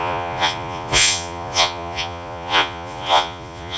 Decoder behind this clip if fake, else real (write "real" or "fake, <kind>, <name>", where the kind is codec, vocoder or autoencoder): fake, vocoder, Vocos